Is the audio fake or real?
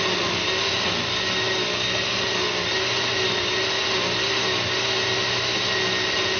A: real